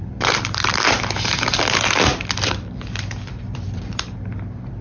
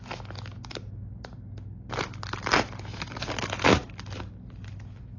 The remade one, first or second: first